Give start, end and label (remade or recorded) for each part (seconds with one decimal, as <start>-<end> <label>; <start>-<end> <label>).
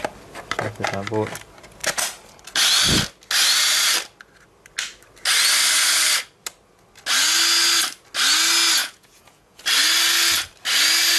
0.0-8.8 recorded; 8.8-9.6 remade; 9.6-11.2 recorded